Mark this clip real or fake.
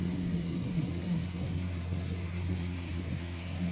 fake